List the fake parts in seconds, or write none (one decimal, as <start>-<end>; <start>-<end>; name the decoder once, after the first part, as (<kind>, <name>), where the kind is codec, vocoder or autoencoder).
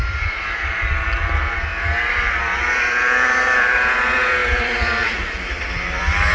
0.0-1.7 (vocoder, BigVGAN v2); 2.4-6.3